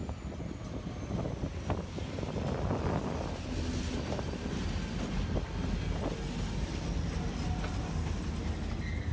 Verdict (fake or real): real